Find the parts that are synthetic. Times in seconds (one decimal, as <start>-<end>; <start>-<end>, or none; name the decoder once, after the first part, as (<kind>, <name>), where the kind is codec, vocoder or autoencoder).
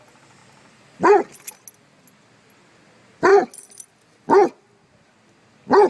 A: none